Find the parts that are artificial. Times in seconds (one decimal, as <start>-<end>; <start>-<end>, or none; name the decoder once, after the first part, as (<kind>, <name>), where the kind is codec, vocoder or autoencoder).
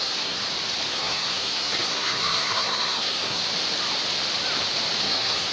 0.0-0.4 (codec, SNAC); 0.9-3.4; 5.0-5.5